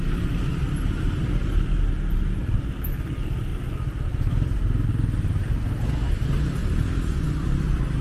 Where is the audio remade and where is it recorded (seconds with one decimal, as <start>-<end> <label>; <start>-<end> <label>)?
0.0-1.4 remade; 1.4-2.6 recorded; 2.6-8.0 remade